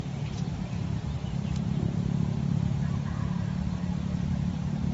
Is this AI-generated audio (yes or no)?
no